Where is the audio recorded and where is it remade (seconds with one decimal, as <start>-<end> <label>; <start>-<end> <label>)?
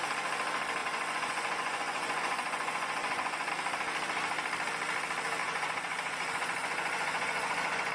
0.0-0.8 recorded; 0.8-3.5 remade; 3.5-5.4 recorded; 5.4-7.9 remade